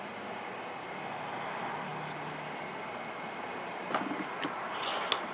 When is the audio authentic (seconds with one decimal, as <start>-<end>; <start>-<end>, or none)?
0.0-5.3